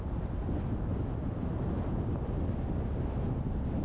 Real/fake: real